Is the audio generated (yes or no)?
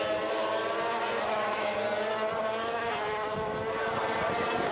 no